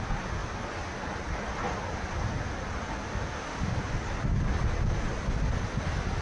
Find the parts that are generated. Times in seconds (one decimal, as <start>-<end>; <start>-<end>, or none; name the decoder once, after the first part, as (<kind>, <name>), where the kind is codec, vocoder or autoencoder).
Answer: 3.1-3.8 (autoencoder, DAC-VAE)